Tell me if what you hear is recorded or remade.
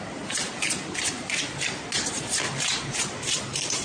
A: recorded